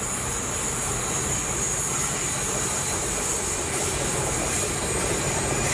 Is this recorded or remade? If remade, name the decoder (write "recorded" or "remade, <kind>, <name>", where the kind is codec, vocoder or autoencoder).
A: recorded